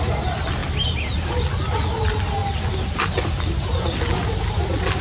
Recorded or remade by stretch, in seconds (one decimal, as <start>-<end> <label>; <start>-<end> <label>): 0.0-0.6 recorded; 0.6-1.4 remade; 1.4-5.0 recorded